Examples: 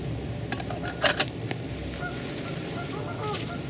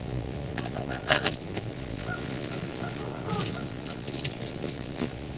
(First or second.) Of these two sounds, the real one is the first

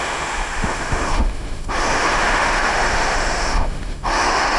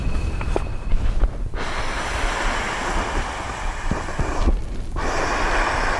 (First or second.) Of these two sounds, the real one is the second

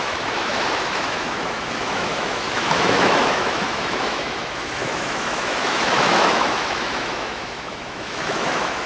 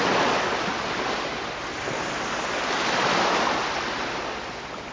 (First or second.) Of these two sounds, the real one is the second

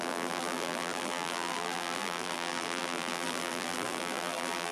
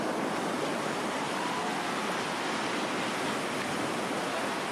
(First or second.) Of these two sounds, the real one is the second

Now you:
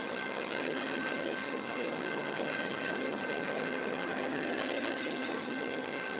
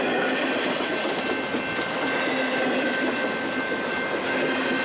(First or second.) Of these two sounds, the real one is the second